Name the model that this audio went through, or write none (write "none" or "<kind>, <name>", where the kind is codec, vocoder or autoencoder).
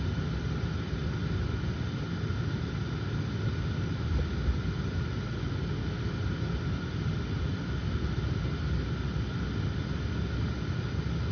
none